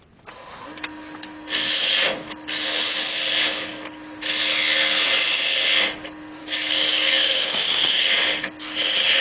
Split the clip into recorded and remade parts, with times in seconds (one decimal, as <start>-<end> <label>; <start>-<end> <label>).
0.0-6.4 recorded; 6.4-8.1 remade; 8.1-9.2 recorded